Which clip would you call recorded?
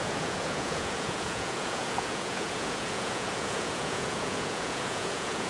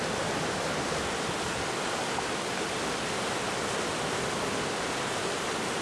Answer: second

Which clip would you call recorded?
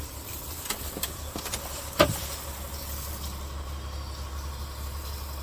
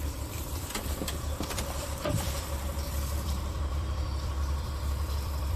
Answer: first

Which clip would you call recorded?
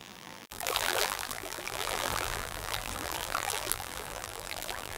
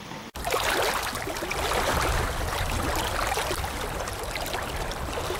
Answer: second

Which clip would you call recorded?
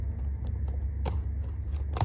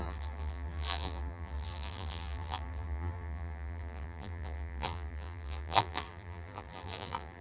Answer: first